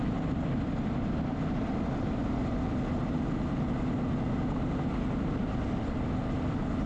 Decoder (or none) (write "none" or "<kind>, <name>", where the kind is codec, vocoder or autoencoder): none